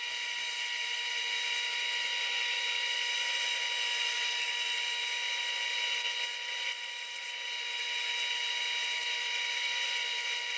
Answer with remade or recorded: recorded